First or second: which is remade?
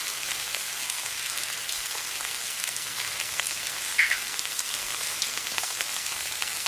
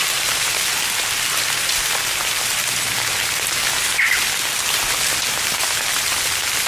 first